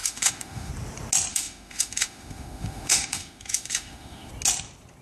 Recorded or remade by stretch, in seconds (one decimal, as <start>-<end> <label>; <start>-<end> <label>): 0.0-0.7 remade; 0.7-1.3 recorded; 1.3-4.3 remade; 4.3-5.0 recorded